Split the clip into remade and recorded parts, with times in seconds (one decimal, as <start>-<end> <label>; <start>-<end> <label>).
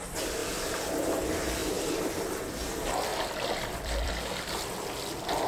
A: 0.0-0.4 recorded; 0.4-1.1 remade; 1.1-1.6 recorded; 1.6-2.3 remade; 2.3-3.1 recorded; 3.1-4.6 remade; 4.6-5.5 recorded